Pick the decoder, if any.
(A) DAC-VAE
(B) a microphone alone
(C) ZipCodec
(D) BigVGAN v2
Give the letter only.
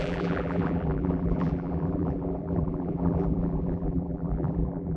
D